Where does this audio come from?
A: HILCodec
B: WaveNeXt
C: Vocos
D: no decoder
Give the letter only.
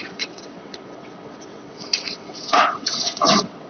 B